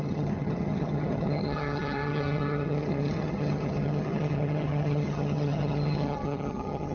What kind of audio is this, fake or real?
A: fake